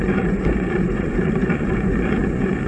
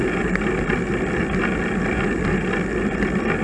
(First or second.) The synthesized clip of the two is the first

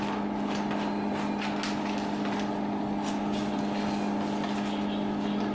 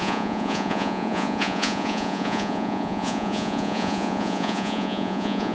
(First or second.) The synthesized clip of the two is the second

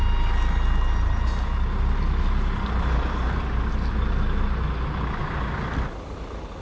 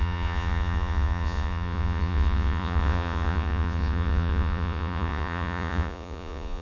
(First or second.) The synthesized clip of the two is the second